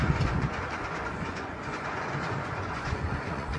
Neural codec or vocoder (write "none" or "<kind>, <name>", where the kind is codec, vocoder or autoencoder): vocoder, Vocos